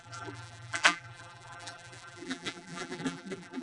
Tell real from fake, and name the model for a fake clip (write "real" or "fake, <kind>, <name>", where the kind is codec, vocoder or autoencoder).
fake, vocoder, BigVGAN v2